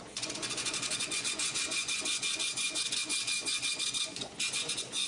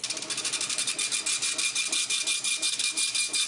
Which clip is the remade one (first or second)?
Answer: first